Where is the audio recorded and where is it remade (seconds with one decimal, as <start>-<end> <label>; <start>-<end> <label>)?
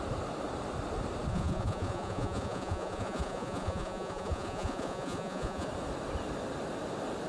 0.0-1.3 recorded; 1.3-5.7 remade; 5.7-7.3 recorded